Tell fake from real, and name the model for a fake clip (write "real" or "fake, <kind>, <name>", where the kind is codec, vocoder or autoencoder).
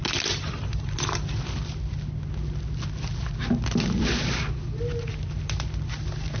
real